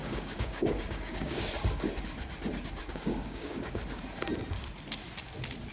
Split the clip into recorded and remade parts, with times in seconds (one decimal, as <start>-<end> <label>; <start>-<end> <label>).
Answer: 0.0-1.5 remade; 1.5-2.8 recorded; 2.8-3.8 remade; 3.8-5.7 recorded